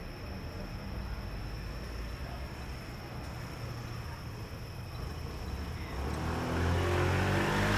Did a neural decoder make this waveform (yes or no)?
no